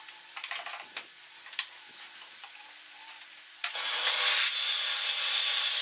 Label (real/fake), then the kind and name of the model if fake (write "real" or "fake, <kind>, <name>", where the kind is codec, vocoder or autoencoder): real